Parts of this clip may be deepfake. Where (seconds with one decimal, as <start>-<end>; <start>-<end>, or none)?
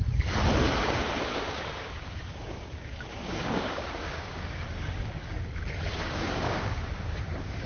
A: 0.8-5.3; 6.0-7.7